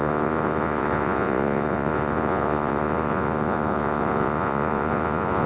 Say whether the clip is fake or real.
fake